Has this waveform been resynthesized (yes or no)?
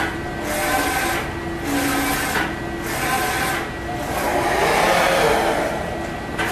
no